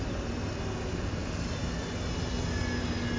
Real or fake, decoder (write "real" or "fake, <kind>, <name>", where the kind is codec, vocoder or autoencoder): real